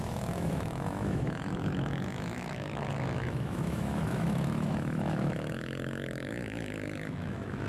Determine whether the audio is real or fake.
fake